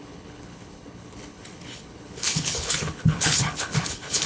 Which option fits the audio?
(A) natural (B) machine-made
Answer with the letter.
B